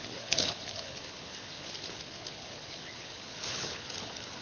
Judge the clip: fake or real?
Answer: fake